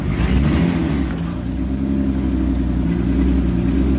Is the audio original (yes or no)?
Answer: yes